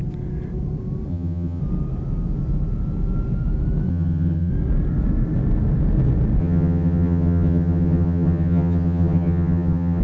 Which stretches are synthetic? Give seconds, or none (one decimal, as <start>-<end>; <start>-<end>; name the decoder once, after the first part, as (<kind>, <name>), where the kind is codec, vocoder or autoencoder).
1.1-1.6 (vocoder, HiFi-GAN); 3.9-4.5; 6.4-10.0